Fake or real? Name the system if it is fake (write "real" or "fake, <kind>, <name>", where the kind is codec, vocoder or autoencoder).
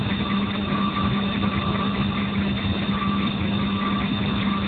real